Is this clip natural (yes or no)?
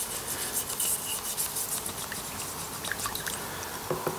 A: yes